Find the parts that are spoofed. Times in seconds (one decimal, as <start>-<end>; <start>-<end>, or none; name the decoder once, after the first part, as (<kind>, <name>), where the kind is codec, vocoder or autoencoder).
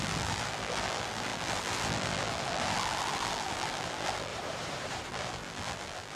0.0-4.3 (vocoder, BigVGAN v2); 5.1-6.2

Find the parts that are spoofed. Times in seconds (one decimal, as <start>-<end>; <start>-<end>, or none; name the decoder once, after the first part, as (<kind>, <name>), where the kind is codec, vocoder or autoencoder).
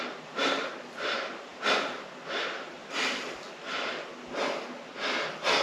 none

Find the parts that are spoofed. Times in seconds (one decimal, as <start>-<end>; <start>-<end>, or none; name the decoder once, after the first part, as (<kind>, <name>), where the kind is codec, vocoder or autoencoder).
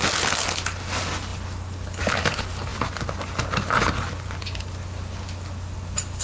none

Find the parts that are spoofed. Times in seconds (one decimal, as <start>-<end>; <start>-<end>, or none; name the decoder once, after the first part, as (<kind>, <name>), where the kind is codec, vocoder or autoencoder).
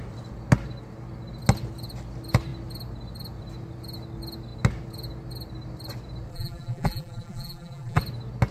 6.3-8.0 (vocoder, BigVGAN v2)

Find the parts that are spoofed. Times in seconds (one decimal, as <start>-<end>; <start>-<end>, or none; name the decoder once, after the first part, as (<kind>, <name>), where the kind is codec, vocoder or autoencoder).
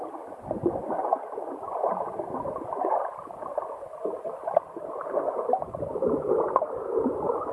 none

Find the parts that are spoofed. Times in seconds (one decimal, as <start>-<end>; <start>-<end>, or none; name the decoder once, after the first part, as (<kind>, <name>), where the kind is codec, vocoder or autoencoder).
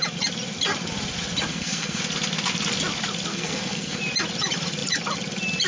1.5-2.0 (codec, SNAC); 3.3-4.0